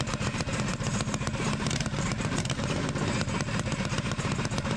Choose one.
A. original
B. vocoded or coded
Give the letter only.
B